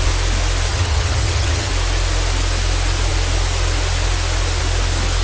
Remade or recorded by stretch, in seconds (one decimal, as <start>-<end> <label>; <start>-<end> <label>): 0.0-0.7 recorded; 0.7-1.7 remade; 1.7-5.2 recorded